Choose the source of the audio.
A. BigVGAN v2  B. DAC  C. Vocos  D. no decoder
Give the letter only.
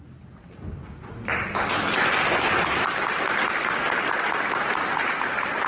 D